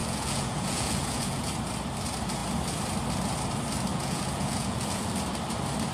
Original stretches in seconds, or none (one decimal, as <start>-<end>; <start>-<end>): 1.5-3.9; 5.1-5.9